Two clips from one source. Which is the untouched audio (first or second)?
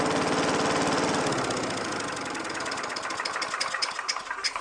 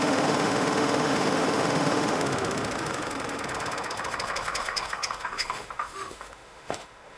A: first